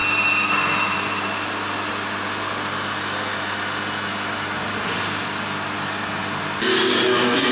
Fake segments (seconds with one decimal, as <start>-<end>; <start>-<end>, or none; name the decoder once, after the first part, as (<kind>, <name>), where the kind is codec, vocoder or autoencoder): none